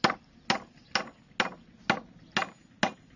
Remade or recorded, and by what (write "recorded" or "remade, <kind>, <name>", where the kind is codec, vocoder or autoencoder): recorded